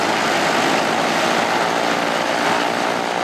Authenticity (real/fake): real